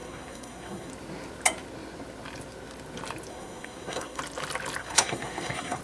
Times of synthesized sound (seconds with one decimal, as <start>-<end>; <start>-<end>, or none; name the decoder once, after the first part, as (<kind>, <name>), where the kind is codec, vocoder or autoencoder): 0.0-0.9 (codec, SNAC); 3.3-4.2; 4.8-5.8